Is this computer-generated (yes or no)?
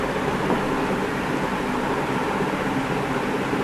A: no